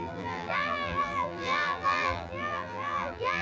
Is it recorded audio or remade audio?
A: remade